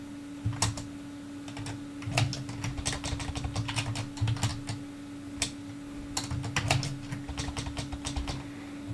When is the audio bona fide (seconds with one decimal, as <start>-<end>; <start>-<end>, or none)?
0.0-8.9